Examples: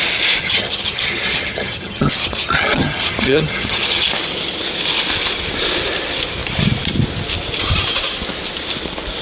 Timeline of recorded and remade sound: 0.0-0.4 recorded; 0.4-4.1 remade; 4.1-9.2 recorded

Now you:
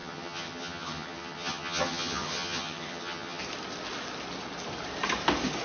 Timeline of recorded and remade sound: 0.0-3.4 remade; 3.4-5.6 recorded

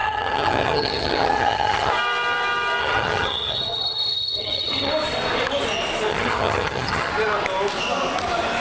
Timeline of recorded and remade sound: 0.0-1.9 remade; 1.9-2.8 recorded; 2.8-4.9 remade; 4.9-6.1 recorded; 6.1-7.1 remade; 7.1-8.6 recorded

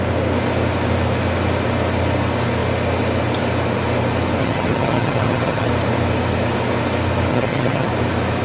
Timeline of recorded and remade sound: 0.0-4.4 recorded; 4.4-5.7 remade; 5.7-7.3 recorded; 7.3-7.9 remade; 7.9-8.4 recorded

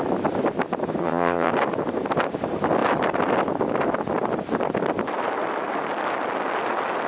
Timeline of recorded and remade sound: 0.0-1.0 recorded; 1.0-1.5 remade; 1.5-7.1 recorded

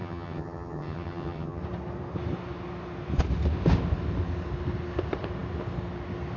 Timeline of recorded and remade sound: 0.0-1.6 remade; 1.6-6.4 recorded

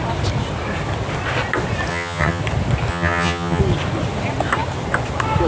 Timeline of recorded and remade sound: 0.0-1.9 recorded; 1.9-2.4 remade; 2.4-2.9 recorded; 2.9-3.6 remade; 3.6-5.5 recorded

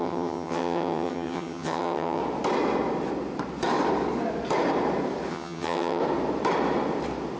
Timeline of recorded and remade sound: 0.0-2.2 remade; 2.2-5.3 recorded; 5.3-6.0 remade; 6.0-7.4 recorded